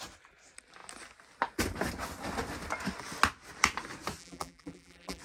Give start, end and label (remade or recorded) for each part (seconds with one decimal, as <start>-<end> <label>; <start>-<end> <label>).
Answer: 0.0-4.2 recorded; 4.2-5.2 remade